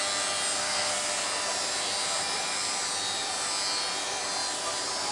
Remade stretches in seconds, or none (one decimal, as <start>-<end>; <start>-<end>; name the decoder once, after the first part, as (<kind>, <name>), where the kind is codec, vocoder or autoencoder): 0.6-1.1 (codec, SNAC)